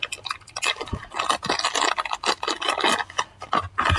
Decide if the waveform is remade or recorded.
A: recorded